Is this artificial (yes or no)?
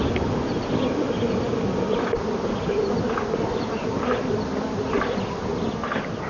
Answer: no